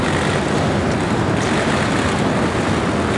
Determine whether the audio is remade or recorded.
recorded